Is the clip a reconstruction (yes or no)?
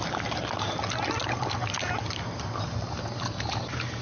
no